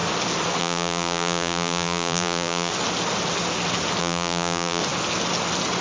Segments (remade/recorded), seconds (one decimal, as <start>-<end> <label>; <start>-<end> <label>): 0.0-0.6 recorded; 0.6-2.7 remade; 2.7-4.0 recorded; 4.0-4.8 remade; 4.8-5.8 recorded